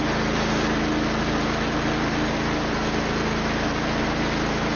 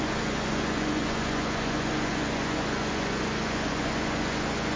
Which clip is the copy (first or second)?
second